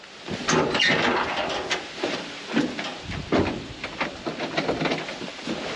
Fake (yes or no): no